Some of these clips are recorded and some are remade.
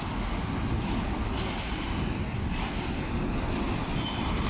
recorded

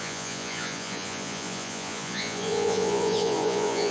remade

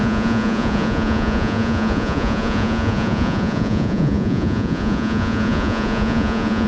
remade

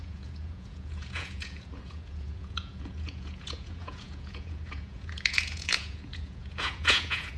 remade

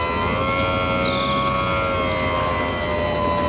recorded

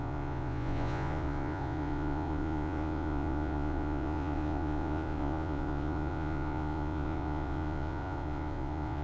remade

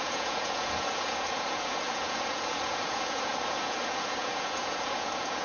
remade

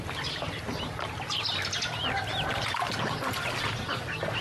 recorded